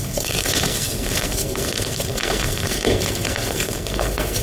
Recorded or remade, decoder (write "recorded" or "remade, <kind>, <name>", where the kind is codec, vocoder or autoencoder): remade, codec, SNAC